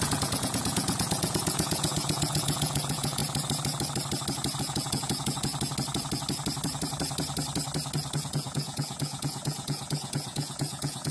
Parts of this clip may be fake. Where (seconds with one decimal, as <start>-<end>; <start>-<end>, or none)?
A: 0.0-3.2; 4.6-5.5; 8.2-11.1